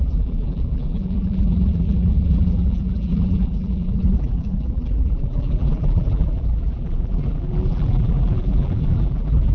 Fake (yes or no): yes